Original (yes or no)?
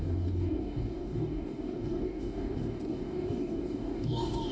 no